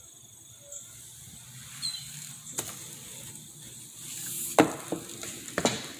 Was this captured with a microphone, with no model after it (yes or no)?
yes